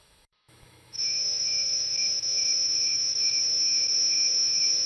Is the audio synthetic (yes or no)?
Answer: yes